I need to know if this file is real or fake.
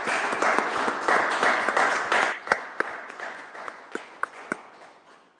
fake